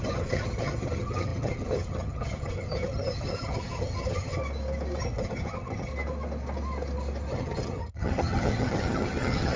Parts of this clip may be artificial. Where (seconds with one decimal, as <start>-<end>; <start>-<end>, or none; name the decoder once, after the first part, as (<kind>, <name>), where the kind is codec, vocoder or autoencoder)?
0.0-4.4 (vocoder, HiFi-GAN); 5.0-5.9; 7.3-9.6